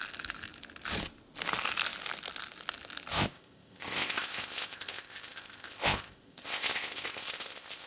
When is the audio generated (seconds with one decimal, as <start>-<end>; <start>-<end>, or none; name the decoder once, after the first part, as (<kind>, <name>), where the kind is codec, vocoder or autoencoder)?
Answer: 3.1-7.9 (codec, ZipCodec)